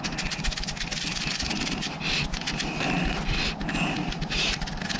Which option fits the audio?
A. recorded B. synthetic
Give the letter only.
A